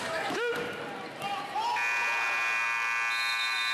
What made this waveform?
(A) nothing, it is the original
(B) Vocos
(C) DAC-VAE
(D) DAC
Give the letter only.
A